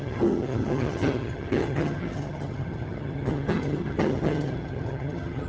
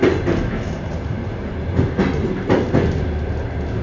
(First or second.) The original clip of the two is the second